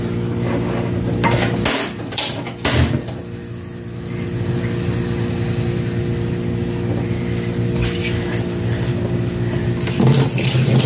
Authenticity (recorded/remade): recorded